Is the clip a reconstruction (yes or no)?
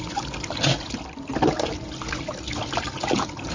no